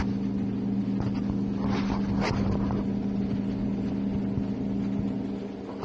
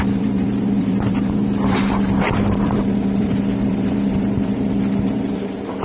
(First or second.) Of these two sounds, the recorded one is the first